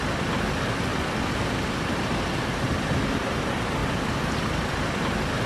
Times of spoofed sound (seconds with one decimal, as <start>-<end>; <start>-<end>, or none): 0.9-1.4; 3.8-5.0